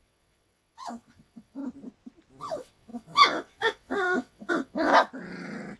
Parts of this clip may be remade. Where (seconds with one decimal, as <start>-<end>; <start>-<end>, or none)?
0.0-1.6; 2.4-4.9